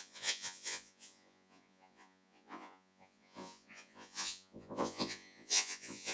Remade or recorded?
remade